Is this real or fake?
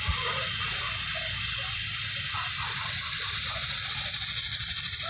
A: real